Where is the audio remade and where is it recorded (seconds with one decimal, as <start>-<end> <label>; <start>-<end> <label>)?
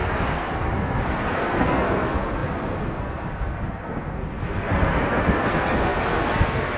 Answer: 0.0-6.8 remade